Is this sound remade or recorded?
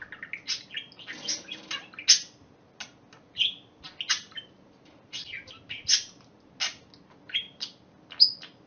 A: recorded